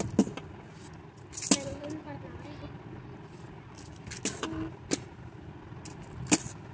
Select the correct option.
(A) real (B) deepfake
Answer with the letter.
A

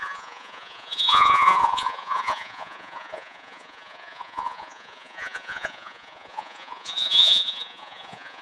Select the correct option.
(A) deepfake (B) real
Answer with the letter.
A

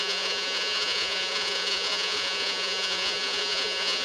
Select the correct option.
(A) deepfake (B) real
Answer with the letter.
A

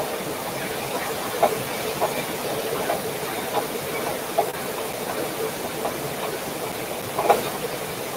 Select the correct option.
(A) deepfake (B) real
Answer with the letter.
B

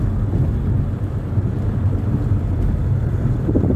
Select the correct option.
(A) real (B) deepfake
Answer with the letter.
A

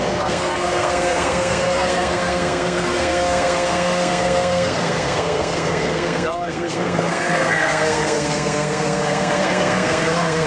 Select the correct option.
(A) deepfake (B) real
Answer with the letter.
A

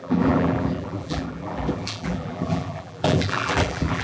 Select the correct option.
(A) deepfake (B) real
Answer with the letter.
A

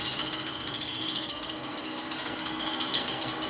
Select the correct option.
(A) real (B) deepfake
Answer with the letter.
B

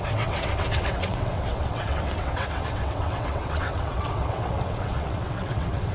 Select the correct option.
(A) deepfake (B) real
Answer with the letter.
A